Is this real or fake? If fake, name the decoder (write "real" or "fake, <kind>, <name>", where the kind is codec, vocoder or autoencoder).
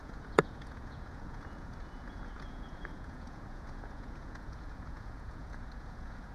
fake, vocoder, Vocos